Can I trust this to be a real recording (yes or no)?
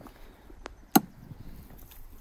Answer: yes